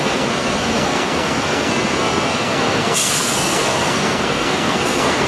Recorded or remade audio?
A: remade